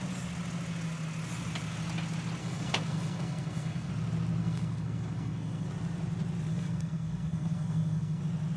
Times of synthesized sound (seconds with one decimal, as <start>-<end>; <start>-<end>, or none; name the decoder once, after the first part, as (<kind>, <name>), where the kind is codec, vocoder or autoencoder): 2.4-3.9 (codec, SNAC); 4.4-5.7; 6.5-8.2